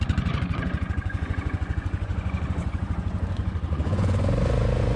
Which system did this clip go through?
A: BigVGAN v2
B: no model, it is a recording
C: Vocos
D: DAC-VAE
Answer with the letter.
C